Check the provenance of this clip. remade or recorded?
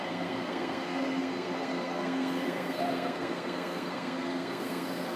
remade